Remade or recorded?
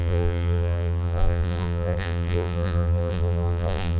remade